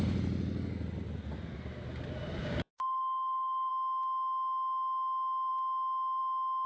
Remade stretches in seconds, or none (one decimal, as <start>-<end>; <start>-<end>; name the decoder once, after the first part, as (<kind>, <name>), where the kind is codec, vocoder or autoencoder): 2.4-3.7 (codec, DAC)